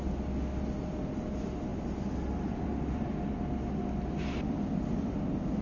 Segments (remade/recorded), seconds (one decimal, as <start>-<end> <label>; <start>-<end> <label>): 0.0-1.7 recorded; 1.7-3.3 remade; 3.3-5.6 recorded

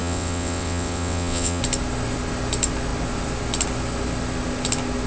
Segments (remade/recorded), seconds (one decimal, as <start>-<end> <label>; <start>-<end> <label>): 0.0-1.6 remade; 1.6-5.1 recorded

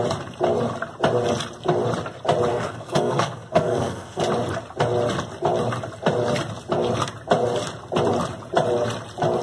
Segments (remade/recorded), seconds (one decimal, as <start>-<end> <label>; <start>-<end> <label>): 0.0-2.5 recorded; 2.5-4.2 remade; 4.2-9.4 recorded

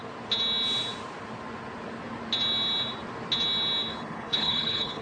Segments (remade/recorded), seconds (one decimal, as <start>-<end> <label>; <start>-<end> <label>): 0.0-3.9 recorded; 3.9-5.0 remade

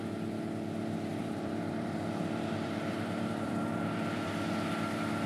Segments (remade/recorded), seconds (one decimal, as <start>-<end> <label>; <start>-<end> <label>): 0.0-1.1 recorded; 1.1-4.3 remade; 4.3-5.3 recorded